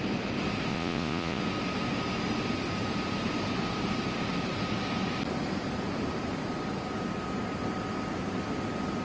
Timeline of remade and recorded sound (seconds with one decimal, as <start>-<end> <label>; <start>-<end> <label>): 0.0-0.7 recorded; 0.7-1.4 remade; 1.4-9.0 recorded